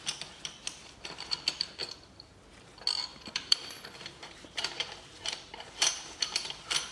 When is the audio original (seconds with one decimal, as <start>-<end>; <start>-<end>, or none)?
0.0-1.8; 2.4-3.1